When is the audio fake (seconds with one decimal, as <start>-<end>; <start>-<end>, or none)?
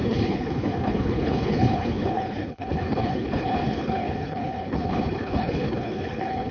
0.0-6.5